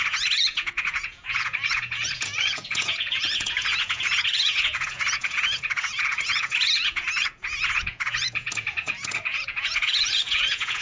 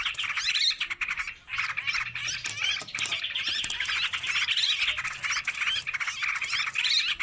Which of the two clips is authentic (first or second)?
second